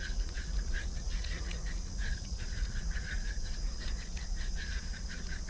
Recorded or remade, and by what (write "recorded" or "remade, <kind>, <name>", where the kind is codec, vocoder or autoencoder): remade, vocoder, Vocos